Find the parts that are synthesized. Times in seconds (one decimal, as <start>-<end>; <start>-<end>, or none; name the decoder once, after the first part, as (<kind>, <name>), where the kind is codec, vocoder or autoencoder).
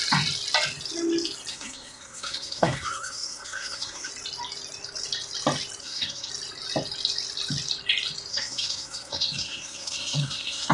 1.5-4.1 (codec, SNAC); 5.8-6.3; 8.3-10.7